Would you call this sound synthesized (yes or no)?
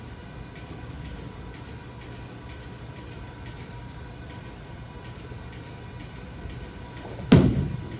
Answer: no